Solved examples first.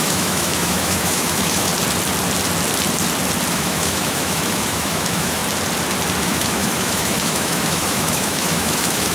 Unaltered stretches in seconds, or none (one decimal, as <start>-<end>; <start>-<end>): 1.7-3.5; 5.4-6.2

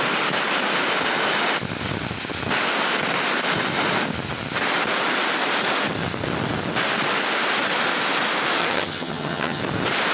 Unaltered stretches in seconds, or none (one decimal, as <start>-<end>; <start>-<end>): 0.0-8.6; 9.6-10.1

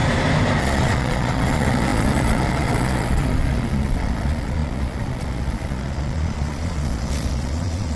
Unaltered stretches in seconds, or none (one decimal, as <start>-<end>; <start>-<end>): 0.0-0.6

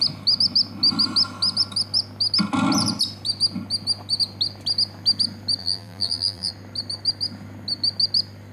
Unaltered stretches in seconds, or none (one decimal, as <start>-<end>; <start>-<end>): 0.0-5.6; 6.5-8.5

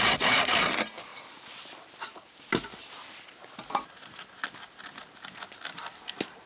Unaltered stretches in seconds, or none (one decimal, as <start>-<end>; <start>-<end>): 0.0-6.5